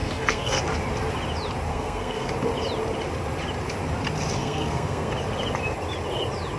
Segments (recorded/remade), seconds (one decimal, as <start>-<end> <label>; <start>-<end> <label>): 0.0-0.6 remade; 0.6-1.7 recorded; 1.7-2.3 remade; 2.3-4.4 recorded; 4.4-5.1 remade; 5.1-6.6 recorded